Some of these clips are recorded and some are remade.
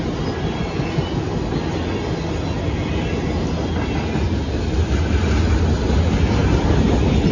recorded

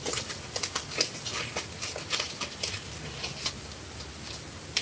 recorded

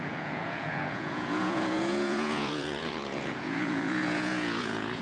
remade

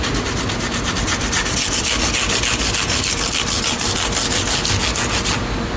recorded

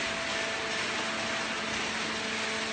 recorded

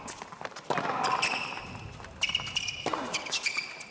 recorded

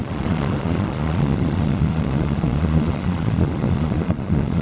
remade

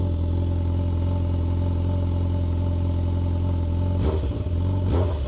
recorded